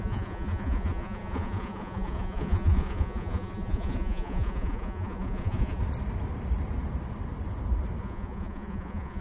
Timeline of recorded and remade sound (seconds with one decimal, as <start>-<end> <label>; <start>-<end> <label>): 0.0-5.8 remade; 5.8-8.0 recorded; 8.0-9.2 remade